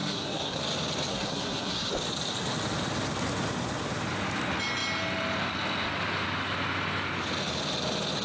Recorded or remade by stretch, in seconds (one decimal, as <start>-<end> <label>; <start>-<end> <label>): 0.0-0.6 remade; 0.6-1.1 recorded; 1.1-1.9 remade; 1.9-8.2 recorded